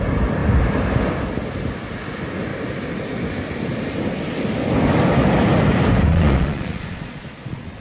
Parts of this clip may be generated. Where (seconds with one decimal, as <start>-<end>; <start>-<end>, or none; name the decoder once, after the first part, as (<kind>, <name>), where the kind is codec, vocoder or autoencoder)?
6.1-7.8 (vocoder, Vocos)